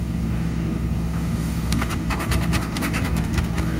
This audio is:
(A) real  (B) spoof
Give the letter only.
B